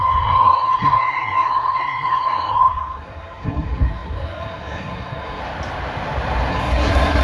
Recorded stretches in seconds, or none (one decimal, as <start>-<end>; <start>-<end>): 5.4-6.5